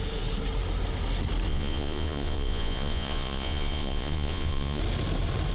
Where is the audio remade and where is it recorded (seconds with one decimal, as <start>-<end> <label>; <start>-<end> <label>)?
0.0-1.5 recorded; 1.5-4.8 remade; 4.8-5.5 recorded